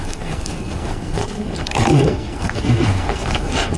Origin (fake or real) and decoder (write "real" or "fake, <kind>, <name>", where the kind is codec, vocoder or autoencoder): fake, codec, SNAC